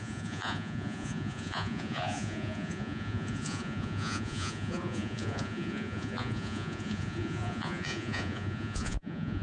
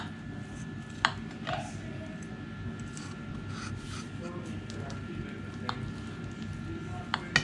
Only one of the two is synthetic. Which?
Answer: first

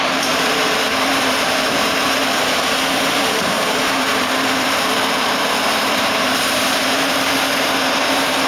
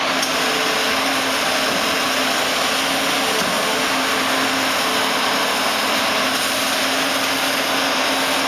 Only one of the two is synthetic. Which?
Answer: first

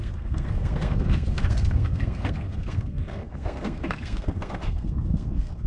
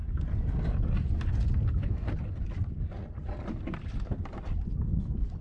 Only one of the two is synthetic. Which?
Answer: first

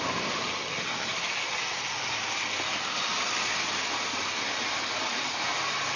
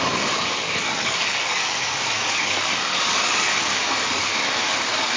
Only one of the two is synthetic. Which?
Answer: second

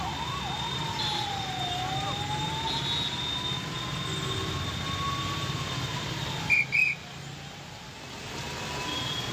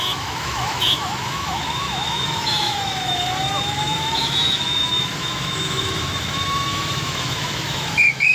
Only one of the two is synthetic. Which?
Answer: second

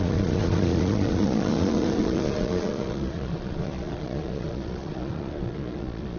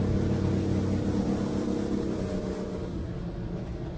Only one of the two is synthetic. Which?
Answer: first